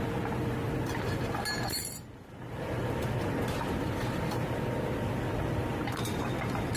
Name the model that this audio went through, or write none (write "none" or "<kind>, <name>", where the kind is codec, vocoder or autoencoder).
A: none